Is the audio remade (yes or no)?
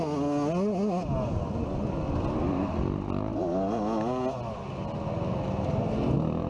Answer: no